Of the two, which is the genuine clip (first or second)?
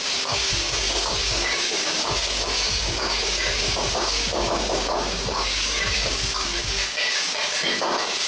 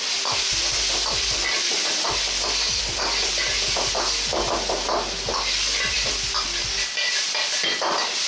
second